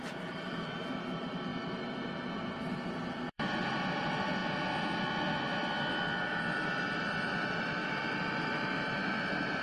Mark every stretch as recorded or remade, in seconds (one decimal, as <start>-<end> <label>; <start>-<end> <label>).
0.0-4.4 remade; 4.4-6.2 recorded; 6.2-9.6 remade